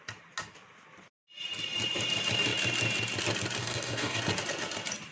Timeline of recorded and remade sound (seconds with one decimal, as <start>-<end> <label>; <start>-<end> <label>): 0.0-3.6 recorded; 3.6-4.2 remade; 4.2-5.1 recorded